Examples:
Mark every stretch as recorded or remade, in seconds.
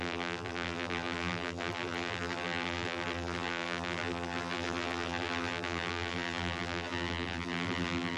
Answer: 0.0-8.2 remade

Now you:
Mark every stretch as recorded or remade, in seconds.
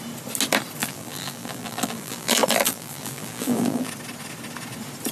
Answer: 0.0-0.8 recorded; 0.8-3.9 remade; 3.9-5.1 recorded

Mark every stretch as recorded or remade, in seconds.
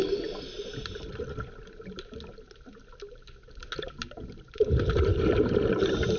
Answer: 0.0-5.1 recorded; 5.1-6.2 remade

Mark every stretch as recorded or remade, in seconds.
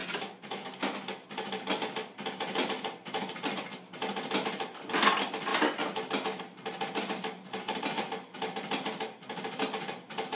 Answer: 0.0-10.3 recorded